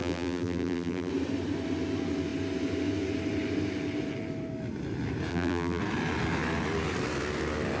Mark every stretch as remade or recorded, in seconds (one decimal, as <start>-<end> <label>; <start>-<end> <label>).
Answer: 0.0-1.1 remade; 1.1-5.3 recorded; 5.3-5.8 remade; 5.8-7.8 recorded